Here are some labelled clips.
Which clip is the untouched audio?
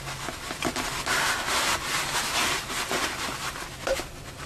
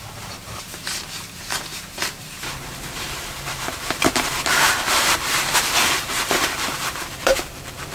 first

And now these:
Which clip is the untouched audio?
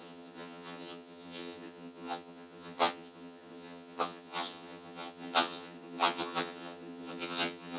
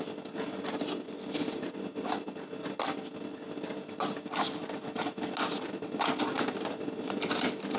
second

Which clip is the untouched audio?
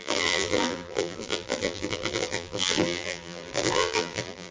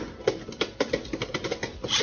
second